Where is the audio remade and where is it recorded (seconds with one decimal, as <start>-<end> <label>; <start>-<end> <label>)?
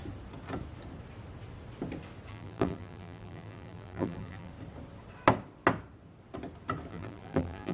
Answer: 0.0-2.3 recorded; 2.3-4.5 remade; 4.5-6.9 recorded; 6.9-7.7 remade